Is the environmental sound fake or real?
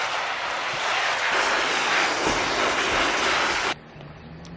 real